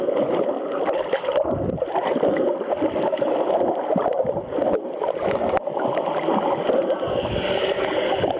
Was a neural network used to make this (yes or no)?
no